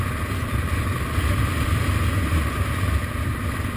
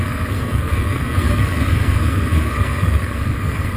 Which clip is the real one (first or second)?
first